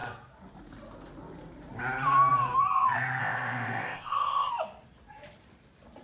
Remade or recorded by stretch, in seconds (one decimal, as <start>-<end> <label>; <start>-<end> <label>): 0.0-3.2 recorded; 3.2-4.5 remade; 4.5-6.0 recorded